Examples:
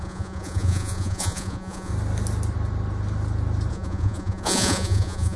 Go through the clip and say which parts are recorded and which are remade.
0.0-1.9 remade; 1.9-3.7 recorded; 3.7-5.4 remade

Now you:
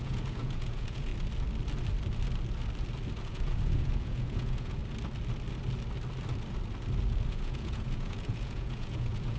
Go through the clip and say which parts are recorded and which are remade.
0.0-1.1 remade; 1.1-3.3 recorded; 3.3-4.8 remade; 4.8-7.3 recorded; 7.3-9.4 remade

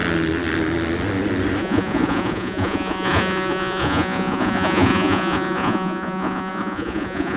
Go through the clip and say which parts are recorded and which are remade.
0.0-1.6 recorded; 1.6-7.4 remade

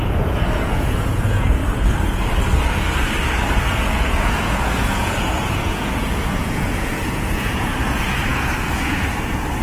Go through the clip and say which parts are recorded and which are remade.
0.0-1.6 remade; 1.6-3.6 recorded; 3.6-9.6 remade

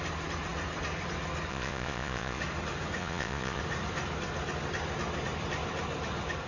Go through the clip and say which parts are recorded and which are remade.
0.0-1.5 recorded; 1.5-2.4 remade; 2.4-3.0 recorded; 3.0-3.6 remade; 3.6-6.5 recorded

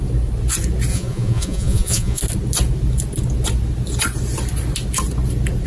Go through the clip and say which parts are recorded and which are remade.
0.0-0.9 recorded; 0.9-2.2 remade; 2.2-5.7 recorded

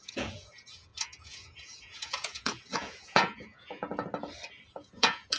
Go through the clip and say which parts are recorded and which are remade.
0.0-3.9 remade; 3.9-4.7 recorded; 4.7-5.4 remade

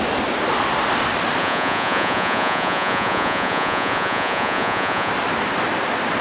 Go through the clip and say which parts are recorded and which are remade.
0.0-1.4 recorded; 1.4-5.1 remade; 5.1-6.2 recorded